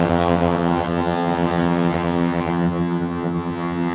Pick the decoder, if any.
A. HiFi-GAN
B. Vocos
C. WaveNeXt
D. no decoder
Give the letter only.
A